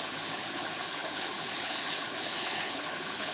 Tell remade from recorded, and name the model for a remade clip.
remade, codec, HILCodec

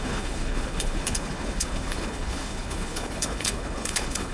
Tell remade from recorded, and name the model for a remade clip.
remade, codec, HILCodec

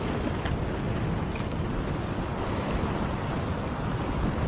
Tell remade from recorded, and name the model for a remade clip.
recorded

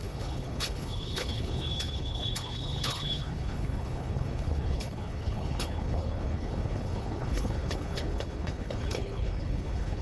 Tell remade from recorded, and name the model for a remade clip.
remade, codec, HILCodec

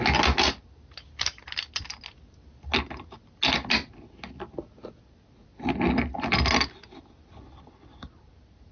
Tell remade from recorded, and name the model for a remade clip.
recorded